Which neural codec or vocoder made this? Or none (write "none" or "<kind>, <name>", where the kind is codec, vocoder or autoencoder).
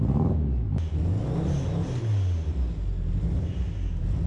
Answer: none